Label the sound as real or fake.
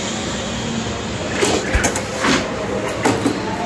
real